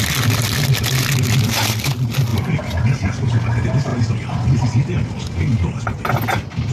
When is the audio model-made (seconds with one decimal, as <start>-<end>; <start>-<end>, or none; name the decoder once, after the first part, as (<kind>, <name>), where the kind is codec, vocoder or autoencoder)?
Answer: none